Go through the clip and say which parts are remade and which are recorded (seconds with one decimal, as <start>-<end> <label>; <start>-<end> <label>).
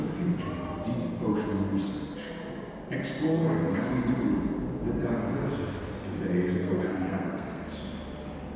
0.0-3.3 recorded; 3.3-3.9 remade; 3.9-6.6 recorded; 6.6-7.8 remade; 7.8-8.6 recorded